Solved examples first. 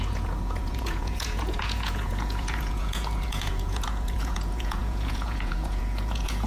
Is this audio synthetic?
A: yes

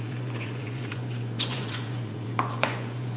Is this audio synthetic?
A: yes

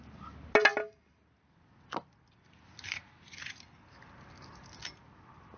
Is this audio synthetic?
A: no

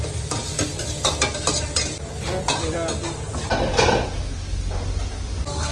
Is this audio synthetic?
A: no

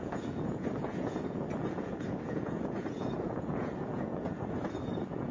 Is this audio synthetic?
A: yes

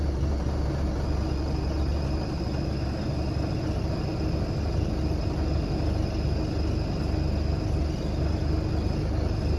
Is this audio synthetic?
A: no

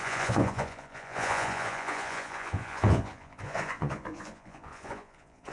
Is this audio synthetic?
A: yes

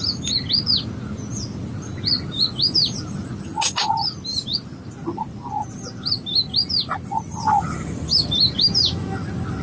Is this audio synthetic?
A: no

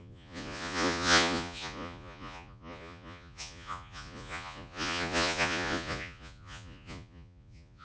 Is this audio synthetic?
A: yes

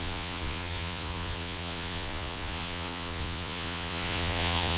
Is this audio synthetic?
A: yes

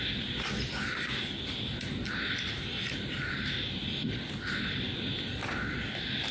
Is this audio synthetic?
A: no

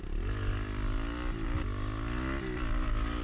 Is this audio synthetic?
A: no